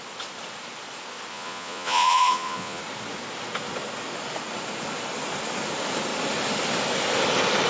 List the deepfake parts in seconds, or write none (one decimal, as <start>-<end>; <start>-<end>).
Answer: 1.3-2.8